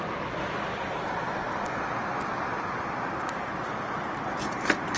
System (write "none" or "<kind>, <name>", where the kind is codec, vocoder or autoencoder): none